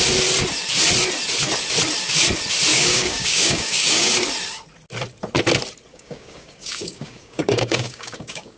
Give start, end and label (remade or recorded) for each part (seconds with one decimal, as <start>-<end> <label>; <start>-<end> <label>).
0.0-2.7 recorded; 2.7-4.1 remade; 4.1-5.9 recorded; 5.9-8.6 remade